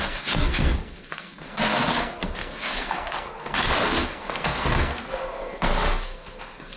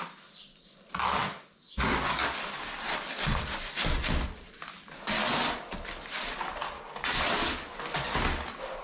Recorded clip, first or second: second